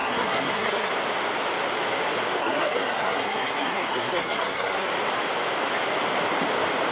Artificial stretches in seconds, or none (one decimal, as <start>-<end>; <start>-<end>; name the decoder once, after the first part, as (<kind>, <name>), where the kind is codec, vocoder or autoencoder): 0.0-0.9 (codec, SNAC); 2.4-4.9